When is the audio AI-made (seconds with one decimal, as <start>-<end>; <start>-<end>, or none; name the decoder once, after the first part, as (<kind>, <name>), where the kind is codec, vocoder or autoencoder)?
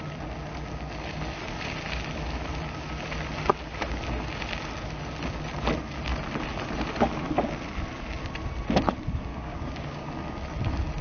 9.3-10.1 (codec, DAC)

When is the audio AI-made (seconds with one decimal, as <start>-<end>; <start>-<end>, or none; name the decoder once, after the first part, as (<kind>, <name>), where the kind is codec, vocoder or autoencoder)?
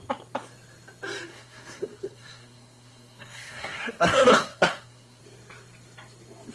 1.3-5.2 (codec, SNAC)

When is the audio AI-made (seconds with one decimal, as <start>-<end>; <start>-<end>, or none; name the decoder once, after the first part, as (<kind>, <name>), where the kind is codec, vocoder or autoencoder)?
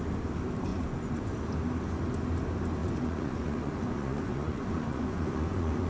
0.7-1.3 (vocoder, Vocos); 2.8-5.9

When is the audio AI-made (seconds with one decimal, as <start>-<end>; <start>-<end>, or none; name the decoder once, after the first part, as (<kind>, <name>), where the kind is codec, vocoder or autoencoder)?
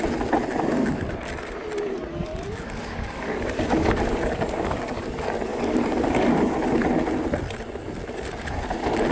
2.3-5.1 (codec, DAC); 5.5-6.1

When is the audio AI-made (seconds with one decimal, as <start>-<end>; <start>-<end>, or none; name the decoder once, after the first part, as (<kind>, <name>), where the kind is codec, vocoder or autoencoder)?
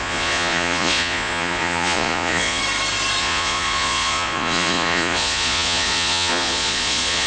0.0-2.6 (vocoder, Vocos); 3.2-7.3